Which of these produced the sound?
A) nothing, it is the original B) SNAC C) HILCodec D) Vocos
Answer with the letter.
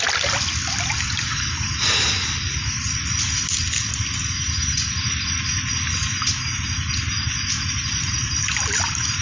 A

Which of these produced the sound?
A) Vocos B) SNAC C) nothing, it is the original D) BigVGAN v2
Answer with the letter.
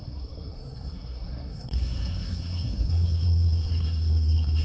B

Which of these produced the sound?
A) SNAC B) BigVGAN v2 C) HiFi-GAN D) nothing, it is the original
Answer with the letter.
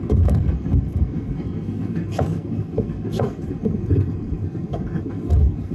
A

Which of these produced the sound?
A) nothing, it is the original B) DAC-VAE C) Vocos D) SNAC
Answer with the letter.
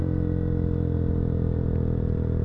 A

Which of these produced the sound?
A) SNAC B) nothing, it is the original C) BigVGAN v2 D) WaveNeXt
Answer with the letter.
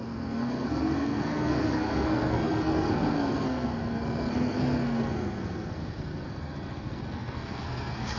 A